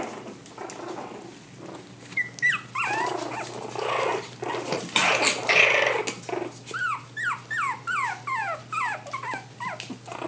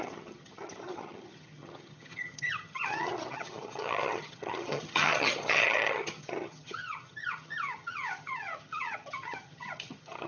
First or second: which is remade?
second